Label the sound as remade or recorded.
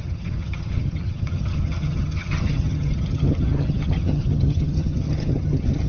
remade